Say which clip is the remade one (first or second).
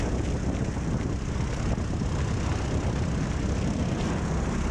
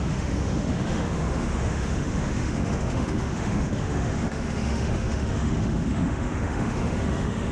second